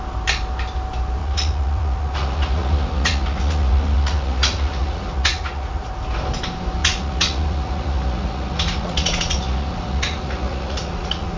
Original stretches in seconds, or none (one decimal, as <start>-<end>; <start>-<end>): 0.0-1.2; 5.9-6.8